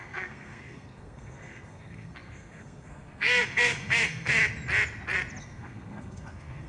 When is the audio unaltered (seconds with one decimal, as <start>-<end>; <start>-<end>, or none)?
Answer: 4.4-5.4